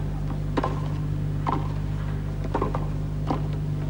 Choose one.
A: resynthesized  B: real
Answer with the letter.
B